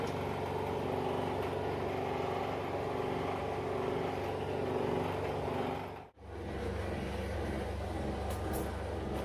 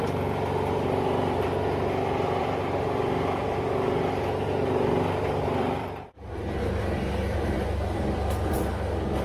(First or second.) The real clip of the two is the first